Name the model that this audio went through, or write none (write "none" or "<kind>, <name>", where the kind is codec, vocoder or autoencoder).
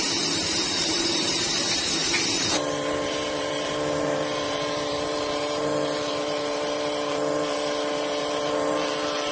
vocoder, BigVGAN v2